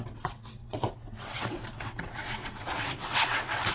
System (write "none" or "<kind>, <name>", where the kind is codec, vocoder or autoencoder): vocoder, WaveNeXt